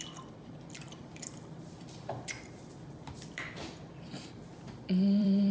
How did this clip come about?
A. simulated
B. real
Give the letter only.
A